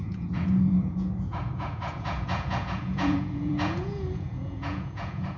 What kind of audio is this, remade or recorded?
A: remade